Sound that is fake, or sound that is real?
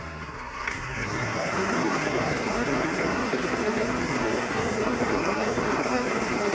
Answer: fake